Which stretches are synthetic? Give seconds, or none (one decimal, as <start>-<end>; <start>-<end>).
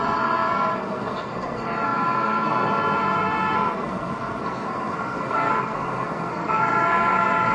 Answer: 0.0-7.5